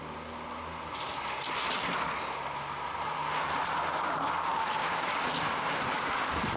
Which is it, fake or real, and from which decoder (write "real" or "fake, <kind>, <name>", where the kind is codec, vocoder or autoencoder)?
real